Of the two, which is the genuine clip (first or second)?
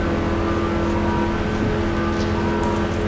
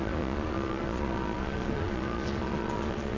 first